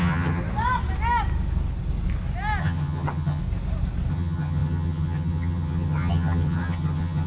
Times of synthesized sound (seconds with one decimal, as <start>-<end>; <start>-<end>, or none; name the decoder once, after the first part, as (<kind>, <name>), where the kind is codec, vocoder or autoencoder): 0.0-0.4 (vocoder, HiFi-GAN); 2.6-3.4; 4.1-7.3